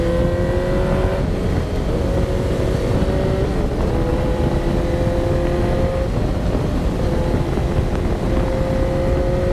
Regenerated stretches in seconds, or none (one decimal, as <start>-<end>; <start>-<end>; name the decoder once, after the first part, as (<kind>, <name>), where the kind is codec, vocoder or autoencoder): 4.1-4.7 (vocoder, BigVGAN v2)